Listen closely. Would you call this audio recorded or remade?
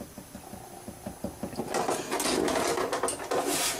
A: recorded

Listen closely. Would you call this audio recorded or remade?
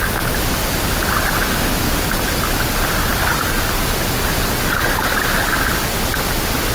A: recorded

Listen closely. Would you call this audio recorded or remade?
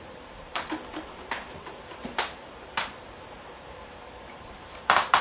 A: remade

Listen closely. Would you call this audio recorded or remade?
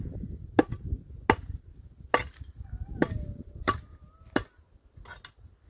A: recorded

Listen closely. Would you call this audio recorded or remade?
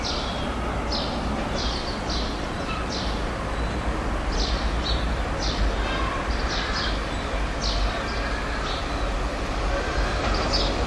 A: recorded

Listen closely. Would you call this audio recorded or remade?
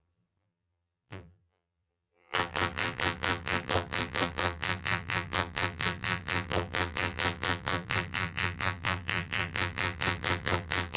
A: remade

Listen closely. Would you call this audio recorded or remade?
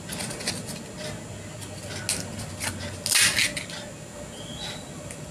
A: recorded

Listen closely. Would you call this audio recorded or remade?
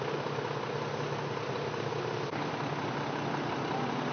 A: recorded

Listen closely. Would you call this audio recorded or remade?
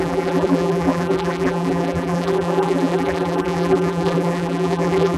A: remade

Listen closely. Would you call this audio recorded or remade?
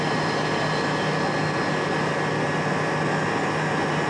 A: recorded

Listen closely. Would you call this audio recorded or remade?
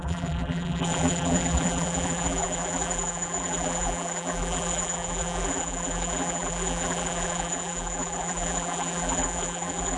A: remade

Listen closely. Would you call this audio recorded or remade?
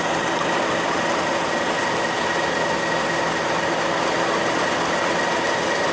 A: recorded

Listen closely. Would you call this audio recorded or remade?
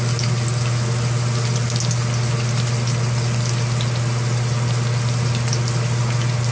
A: recorded